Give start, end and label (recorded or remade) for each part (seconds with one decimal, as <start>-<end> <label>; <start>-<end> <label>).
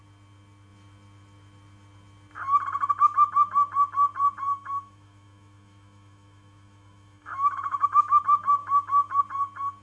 0.0-4.5 recorded; 4.5-8.2 remade; 8.2-8.6 recorded; 8.6-9.2 remade; 9.2-9.8 recorded